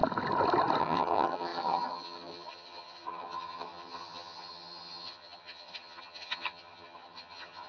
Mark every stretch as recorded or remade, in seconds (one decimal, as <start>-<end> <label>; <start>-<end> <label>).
0.0-0.8 recorded; 0.8-7.7 remade